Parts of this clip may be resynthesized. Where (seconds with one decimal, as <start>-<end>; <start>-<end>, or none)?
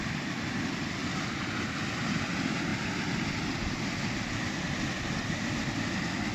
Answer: none